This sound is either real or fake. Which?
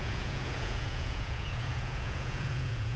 fake